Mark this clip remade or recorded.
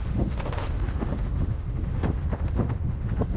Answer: remade